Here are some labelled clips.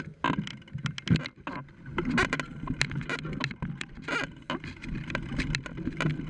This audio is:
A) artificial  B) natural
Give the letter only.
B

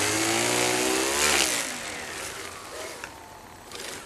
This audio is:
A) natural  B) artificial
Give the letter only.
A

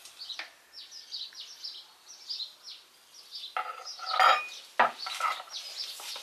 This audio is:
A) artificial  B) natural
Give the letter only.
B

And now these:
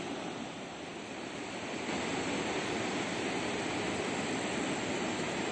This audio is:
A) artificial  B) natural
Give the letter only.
B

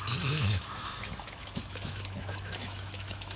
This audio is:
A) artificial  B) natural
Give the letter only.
A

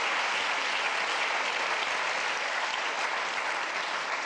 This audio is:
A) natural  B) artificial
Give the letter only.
A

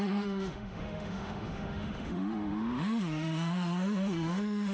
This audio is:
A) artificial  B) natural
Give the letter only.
A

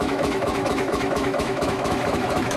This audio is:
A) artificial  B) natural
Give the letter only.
A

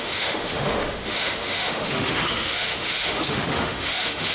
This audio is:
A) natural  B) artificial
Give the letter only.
B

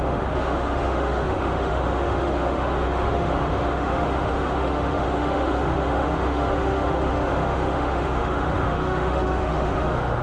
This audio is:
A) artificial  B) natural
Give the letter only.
A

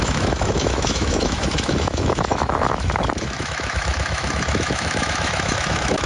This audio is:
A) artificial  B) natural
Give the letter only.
A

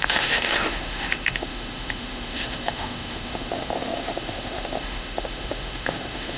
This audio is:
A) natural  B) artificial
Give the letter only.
B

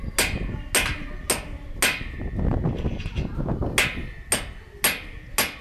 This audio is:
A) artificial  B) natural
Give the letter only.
B